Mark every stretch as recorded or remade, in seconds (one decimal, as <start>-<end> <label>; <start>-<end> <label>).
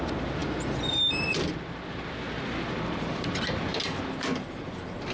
0.0-0.4 recorded; 0.4-1.5 remade; 1.5-5.1 recorded